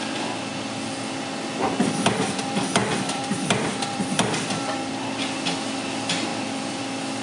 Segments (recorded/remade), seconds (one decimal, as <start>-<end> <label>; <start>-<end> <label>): 0.0-2.8 recorded; 2.8-4.9 remade; 4.9-6.3 recorded; 6.3-6.8 remade; 6.8-7.2 recorded